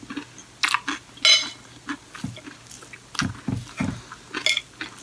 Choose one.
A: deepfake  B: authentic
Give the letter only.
B